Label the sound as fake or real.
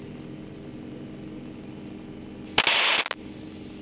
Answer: real